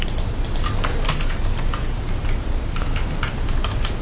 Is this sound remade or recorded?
recorded